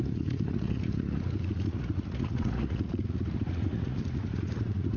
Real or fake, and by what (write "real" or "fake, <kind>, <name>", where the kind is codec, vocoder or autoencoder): fake, vocoder, Vocos